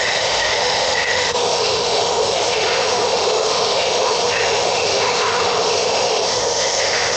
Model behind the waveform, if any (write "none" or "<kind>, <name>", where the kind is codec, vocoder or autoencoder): autoencoder, DAC-VAE